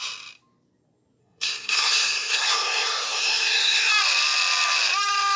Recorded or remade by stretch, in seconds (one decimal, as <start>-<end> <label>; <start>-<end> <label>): 0.0-1.2 recorded; 1.2-3.9 remade; 3.9-5.4 recorded